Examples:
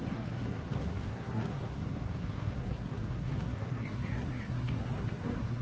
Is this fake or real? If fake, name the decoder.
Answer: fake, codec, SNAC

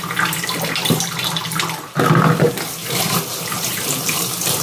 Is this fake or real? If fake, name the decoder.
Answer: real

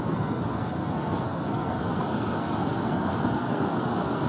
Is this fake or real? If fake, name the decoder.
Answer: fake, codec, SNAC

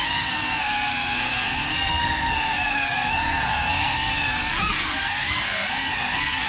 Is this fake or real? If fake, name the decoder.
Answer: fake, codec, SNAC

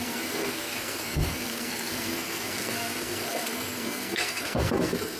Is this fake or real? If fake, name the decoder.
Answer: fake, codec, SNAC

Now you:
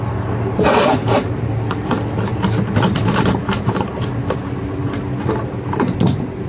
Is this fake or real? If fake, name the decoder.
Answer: real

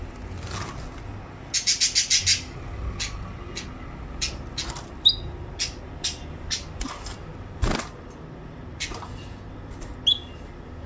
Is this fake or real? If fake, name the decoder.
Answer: real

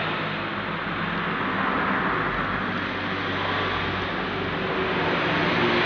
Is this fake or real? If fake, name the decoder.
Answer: real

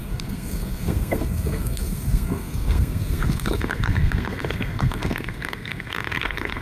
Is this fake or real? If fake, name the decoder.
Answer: fake, codec, SNAC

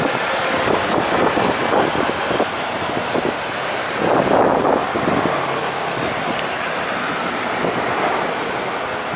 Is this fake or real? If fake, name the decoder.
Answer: real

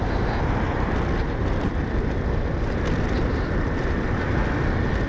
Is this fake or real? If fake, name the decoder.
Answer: real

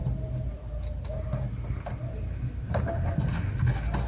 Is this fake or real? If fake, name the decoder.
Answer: real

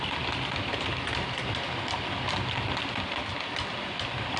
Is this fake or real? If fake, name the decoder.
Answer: real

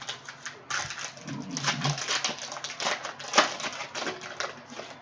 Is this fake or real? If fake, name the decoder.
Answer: real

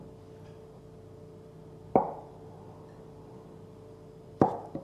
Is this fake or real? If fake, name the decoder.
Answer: real